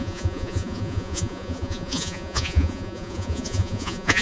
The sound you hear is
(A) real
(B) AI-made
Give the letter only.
B